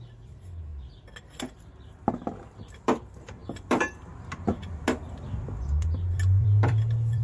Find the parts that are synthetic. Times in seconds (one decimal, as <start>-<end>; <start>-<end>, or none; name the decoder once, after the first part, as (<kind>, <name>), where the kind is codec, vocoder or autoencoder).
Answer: 0.0-7.2 (vocoder, BigVGAN v2)